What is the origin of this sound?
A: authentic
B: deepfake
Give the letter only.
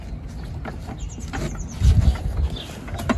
A